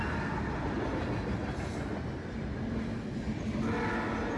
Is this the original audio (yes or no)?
yes